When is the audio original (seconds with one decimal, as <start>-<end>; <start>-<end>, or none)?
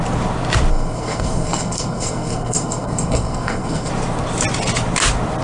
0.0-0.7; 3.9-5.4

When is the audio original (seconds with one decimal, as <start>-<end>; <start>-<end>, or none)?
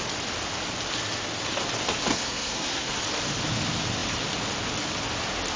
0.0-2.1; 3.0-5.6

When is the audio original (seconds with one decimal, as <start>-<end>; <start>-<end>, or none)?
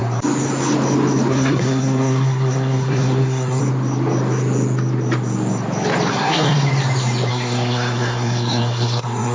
0.0-1.3; 3.6-6.1; 6.7-7.3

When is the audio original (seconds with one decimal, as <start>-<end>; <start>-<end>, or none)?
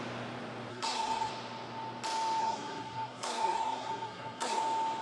0.0-0.7; 1.3-2.4; 4.6-5.0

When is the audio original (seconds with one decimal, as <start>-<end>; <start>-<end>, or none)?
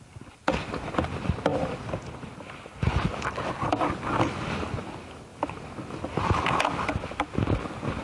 0.0-8.0